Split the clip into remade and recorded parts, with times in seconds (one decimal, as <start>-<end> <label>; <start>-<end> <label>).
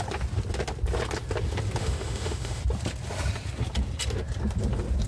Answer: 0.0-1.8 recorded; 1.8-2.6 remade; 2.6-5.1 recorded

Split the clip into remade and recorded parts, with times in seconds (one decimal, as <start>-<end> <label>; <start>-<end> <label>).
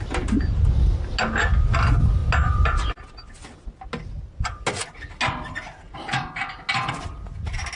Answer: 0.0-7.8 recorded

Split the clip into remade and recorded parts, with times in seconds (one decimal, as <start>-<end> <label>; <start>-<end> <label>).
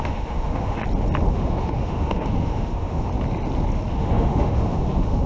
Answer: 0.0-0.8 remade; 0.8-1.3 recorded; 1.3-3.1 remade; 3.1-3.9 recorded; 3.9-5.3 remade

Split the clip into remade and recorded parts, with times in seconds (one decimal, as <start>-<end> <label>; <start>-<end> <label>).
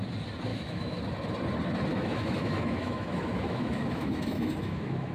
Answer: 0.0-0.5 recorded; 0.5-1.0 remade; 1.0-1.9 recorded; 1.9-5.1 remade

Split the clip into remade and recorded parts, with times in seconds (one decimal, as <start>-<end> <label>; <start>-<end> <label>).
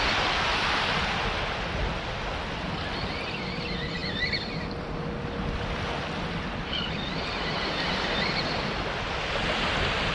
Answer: 0.0-10.1 recorded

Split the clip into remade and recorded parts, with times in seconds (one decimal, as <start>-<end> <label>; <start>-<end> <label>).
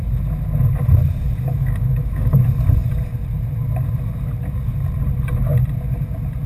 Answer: 0.0-1.5 recorded; 1.5-2.4 remade; 2.4-6.5 recorded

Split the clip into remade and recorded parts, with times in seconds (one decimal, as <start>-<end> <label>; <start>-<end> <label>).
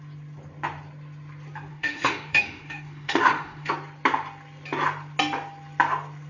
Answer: 0.0-1.7 recorded; 1.7-3.7 remade; 3.7-6.3 recorded